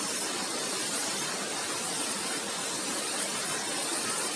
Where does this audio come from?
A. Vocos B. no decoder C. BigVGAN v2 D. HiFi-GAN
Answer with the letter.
B